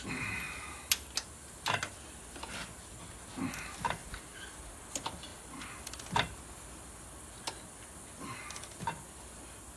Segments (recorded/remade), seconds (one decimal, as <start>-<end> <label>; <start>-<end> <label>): 0.0-9.8 recorded